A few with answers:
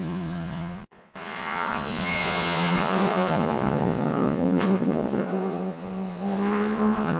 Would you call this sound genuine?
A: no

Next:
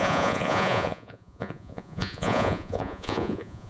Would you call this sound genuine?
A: no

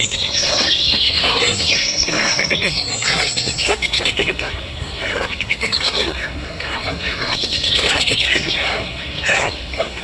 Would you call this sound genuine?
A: no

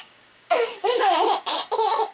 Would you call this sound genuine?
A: no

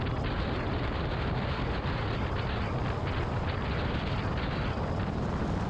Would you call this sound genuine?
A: yes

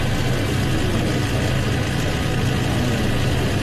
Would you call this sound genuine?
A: yes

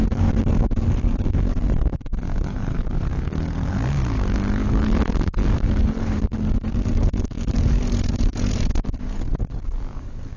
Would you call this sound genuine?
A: no